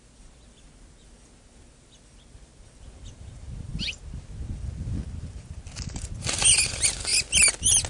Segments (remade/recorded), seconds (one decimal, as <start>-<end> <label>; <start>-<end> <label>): 0.0-7.9 recorded